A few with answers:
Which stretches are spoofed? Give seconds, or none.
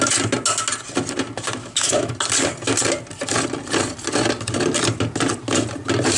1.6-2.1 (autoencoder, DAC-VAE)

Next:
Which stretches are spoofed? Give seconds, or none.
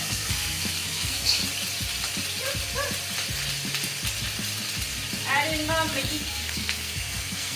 0.0-1.4 (codec, SNAC); 6.0-7.6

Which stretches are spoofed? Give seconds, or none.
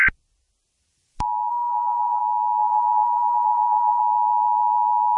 1.5-2.2 (codec, SNAC); 2.6-4.0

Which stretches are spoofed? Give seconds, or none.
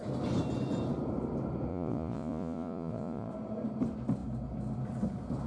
1.7-3.3 (vocoder, Vocos)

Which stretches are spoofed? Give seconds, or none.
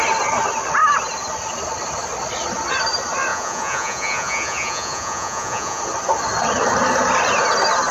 3.3-5.8 (vocoder, Vocos)